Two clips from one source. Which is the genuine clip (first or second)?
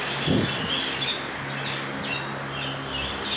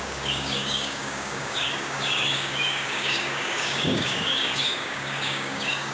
first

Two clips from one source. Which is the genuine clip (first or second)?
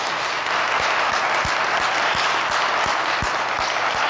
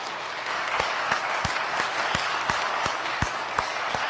first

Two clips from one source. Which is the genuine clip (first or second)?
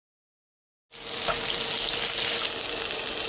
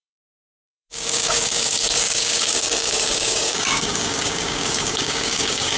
first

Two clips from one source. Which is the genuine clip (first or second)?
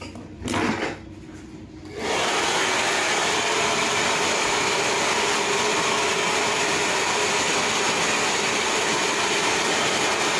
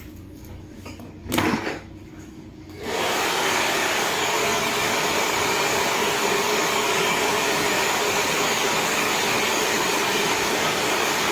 first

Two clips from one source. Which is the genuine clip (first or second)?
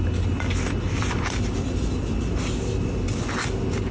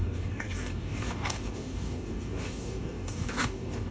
first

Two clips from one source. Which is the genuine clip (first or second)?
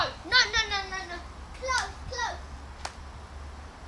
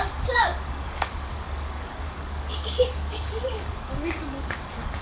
first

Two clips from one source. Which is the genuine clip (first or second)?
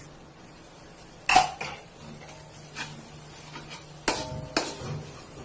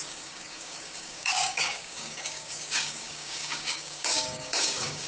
first